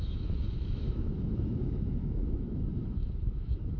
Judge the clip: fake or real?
fake